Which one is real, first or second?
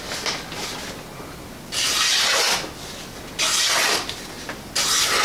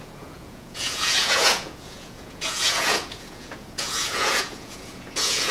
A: first